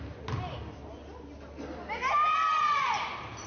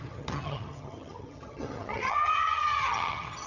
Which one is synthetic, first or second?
second